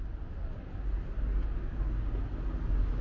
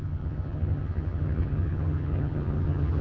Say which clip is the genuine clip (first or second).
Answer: first